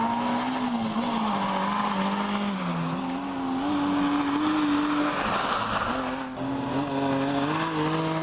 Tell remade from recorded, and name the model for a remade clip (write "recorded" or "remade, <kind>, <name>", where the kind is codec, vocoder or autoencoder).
recorded